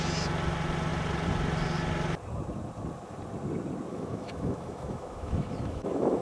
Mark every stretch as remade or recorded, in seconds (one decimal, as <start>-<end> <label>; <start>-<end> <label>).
0.0-3.9 recorded; 3.9-6.2 remade

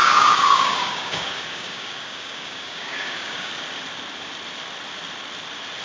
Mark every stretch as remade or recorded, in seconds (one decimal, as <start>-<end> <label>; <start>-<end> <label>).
0.0-3.5 remade; 3.5-5.8 recorded

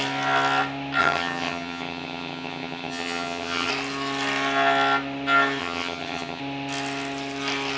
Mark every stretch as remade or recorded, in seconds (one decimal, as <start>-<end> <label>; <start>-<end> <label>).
0.0-1.0 recorded; 1.0-3.7 remade; 3.7-5.6 recorded; 5.6-6.4 remade; 6.4-7.8 recorded

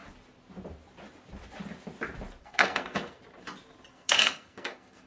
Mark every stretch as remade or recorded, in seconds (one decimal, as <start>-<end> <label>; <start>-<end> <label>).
0.0-2.4 recorded; 2.4-3.2 remade; 3.2-3.9 recorded; 3.9-5.1 remade

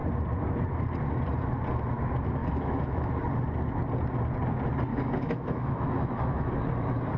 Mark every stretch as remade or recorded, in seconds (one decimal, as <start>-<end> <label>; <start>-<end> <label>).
0.0-2.4 recorded; 2.4-3.1 remade; 3.1-4.9 recorded; 4.9-6.5 remade; 6.5-7.2 recorded

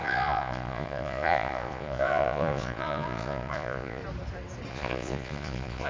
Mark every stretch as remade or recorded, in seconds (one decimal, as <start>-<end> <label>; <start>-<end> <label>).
0.0-4.0 remade; 4.0-4.7 recorded; 4.7-5.9 remade

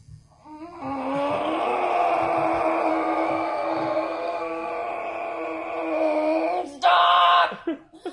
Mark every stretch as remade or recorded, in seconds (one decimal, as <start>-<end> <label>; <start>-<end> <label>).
0.0-2.9 recorded; 2.9-4.7 remade; 4.7-8.1 recorded

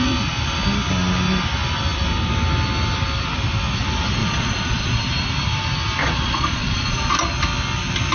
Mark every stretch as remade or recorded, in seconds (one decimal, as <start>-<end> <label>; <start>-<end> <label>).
0.0-4.2 recorded; 4.2-5.0 remade; 5.0-6.0 recorded; 6.0-7.1 remade; 7.1-8.1 recorded